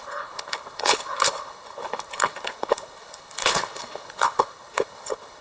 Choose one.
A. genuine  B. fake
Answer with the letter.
B